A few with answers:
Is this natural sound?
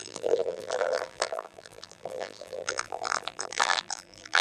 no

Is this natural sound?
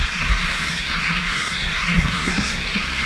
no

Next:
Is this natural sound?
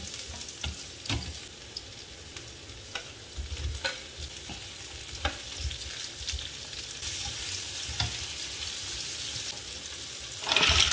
yes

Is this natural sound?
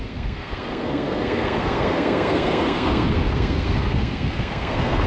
no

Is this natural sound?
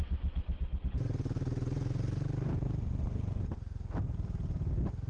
yes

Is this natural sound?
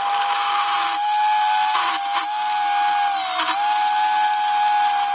yes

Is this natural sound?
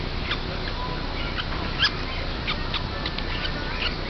yes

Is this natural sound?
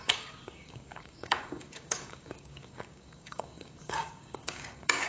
no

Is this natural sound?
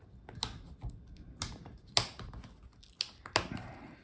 yes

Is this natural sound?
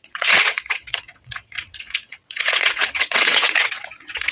no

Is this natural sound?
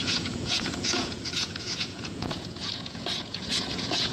no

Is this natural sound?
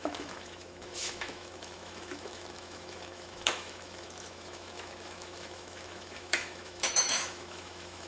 no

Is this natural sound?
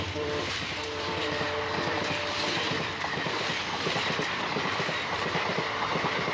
no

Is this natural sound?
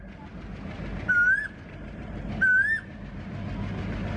yes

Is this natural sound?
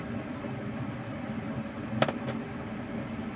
yes